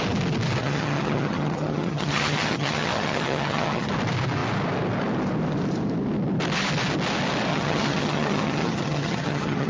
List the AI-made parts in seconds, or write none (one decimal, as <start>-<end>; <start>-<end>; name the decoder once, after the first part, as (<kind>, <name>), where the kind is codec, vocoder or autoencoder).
0.6-3.9 (vocoder, HiFi-GAN); 7.5-9.7